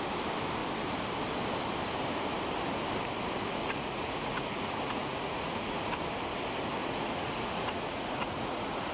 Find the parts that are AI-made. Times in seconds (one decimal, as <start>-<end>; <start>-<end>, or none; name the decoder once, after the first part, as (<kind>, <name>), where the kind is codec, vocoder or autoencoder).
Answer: 3.6-5.9 (vocoder, Vocos); 6.8-8.9